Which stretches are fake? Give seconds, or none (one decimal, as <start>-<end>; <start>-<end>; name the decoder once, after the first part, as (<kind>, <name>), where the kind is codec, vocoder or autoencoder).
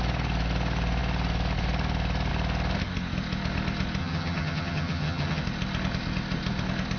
4.0-5.4 (vocoder, HiFi-GAN)